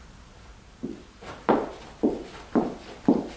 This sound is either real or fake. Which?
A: real